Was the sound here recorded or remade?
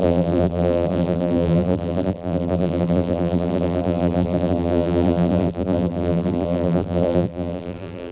remade